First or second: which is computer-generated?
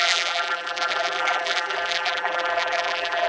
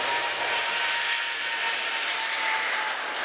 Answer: first